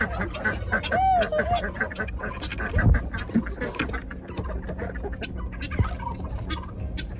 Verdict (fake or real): real